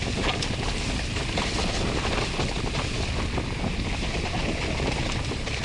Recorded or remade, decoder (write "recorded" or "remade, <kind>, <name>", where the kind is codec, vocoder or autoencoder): recorded